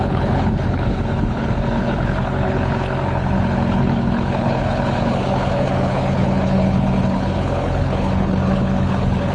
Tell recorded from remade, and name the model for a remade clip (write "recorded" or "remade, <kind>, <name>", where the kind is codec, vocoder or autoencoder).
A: remade, codec, HILCodec